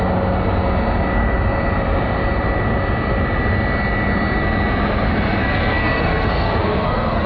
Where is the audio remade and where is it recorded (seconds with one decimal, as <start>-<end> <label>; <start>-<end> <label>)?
0.0-5.4 recorded; 5.4-7.3 remade

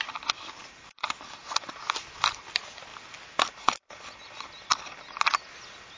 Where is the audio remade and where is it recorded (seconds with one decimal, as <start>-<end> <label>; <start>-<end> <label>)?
0.0-6.0 recorded